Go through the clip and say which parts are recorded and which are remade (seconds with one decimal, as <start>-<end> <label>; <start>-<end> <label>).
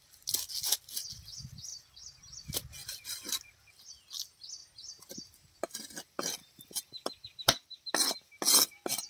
0.0-1.7 recorded; 1.7-2.2 remade; 2.2-2.8 recorded; 2.8-4.0 remade; 4.0-9.1 recorded